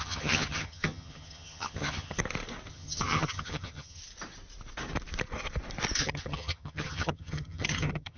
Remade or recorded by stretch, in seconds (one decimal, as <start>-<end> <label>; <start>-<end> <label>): 0.0-2.2 remade; 2.2-2.7 recorded; 2.7-4.0 remade; 4.0-6.0 recorded; 6.0-8.2 remade

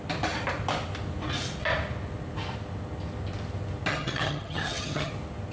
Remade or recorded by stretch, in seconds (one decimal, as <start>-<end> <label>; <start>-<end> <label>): 0.0-3.9 recorded; 3.9-5.1 remade; 5.1-5.5 recorded

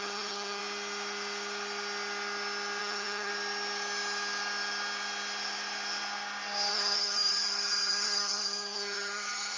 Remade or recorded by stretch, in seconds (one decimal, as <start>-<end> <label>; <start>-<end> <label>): 0.0-0.6 remade; 0.6-2.8 recorded; 2.8-3.3 remade; 3.3-6.7 recorded; 6.7-9.6 remade